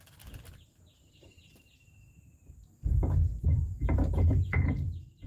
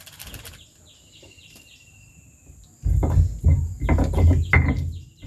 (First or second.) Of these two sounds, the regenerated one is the first